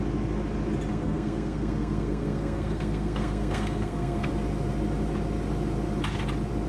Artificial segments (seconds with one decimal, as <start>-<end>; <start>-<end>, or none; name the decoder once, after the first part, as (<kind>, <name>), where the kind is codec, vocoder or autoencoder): 0.9-4.3 (codec, SNAC)